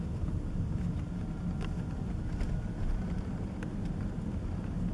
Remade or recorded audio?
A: recorded